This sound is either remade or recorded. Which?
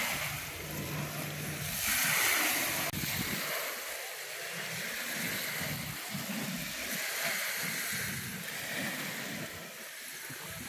recorded